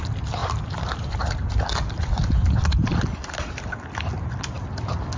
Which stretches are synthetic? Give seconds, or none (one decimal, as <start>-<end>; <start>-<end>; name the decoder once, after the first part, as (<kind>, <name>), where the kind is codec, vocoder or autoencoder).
0.4-3.5 (vocoder, BigVGAN v2)